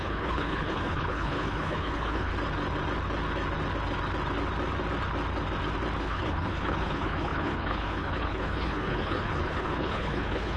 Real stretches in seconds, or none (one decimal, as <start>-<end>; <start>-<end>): 2.3-6.0